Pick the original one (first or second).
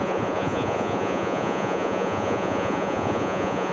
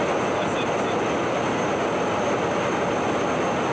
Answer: second